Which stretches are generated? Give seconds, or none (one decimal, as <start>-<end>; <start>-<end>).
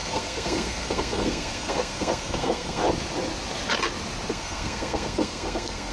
0.0-2.8; 4.3-5.9